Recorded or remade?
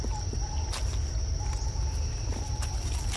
recorded